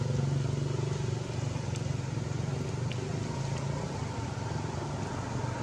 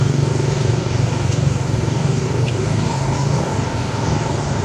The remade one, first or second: second